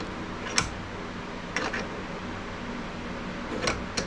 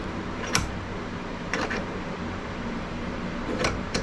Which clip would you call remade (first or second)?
second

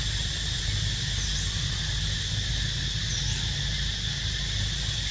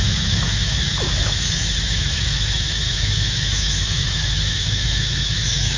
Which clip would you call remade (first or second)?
second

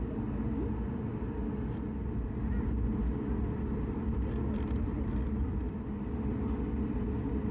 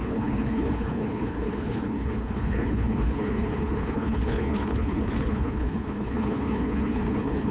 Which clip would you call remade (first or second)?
second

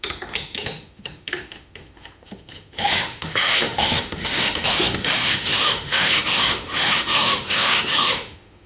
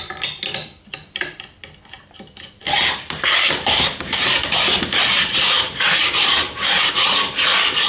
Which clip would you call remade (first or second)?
first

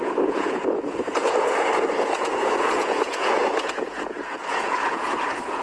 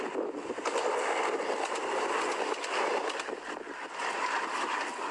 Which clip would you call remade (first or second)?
first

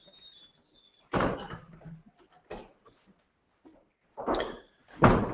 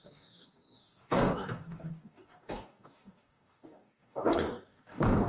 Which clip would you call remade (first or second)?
second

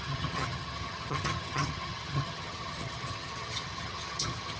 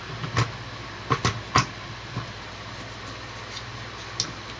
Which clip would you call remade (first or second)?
first